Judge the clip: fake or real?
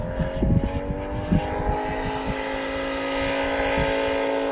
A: real